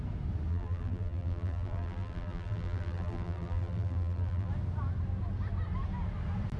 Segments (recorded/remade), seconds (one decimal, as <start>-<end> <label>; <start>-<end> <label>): 0.0-0.5 recorded; 0.5-4.5 remade; 4.5-6.6 recorded